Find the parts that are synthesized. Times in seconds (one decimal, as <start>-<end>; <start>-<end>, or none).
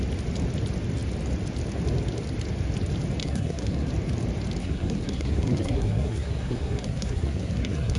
3.2-3.9; 4.6-8.0